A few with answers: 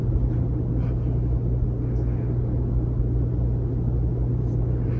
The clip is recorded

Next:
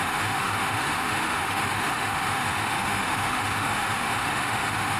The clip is remade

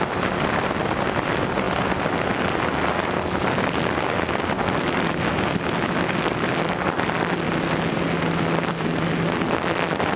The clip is recorded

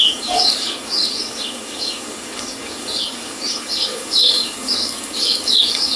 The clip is remade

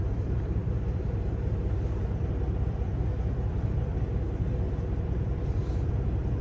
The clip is remade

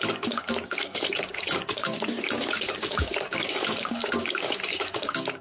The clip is remade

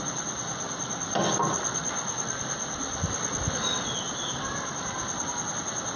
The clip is recorded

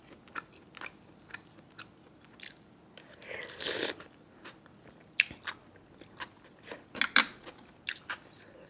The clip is recorded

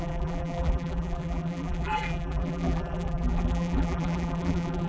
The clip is remade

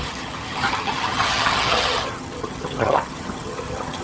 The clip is remade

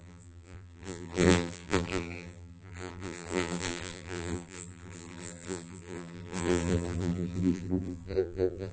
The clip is remade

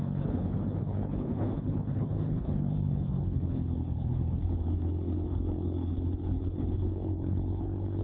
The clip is remade